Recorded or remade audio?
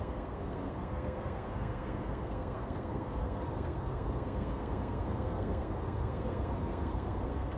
remade